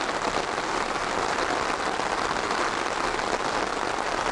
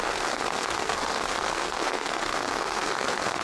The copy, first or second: second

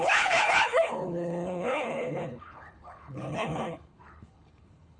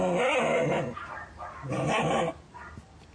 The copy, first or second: first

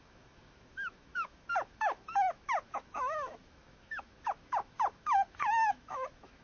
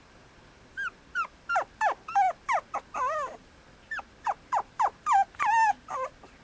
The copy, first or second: first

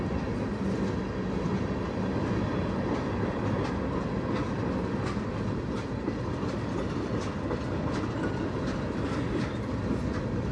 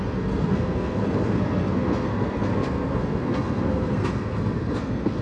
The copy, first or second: second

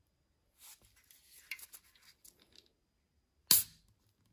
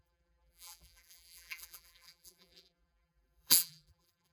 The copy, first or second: second